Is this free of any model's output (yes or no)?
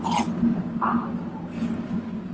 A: yes